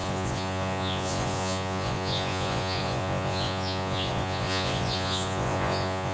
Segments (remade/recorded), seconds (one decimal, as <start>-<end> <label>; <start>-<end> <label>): 0.0-6.1 remade